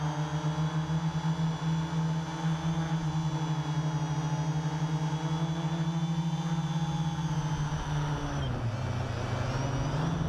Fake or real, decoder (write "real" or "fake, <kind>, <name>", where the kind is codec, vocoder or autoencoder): real